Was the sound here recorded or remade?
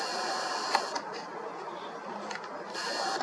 recorded